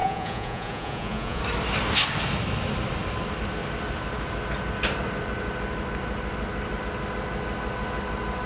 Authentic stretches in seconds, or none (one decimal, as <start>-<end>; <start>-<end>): 1.4-8.5